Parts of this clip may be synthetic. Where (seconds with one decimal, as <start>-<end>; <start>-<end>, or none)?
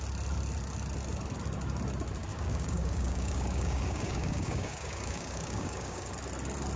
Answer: 2.3-6.1